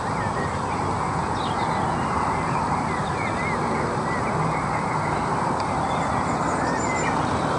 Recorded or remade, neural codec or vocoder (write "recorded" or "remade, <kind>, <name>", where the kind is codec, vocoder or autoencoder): recorded